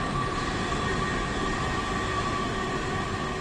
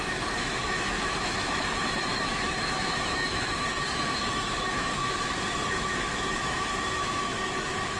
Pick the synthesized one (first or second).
second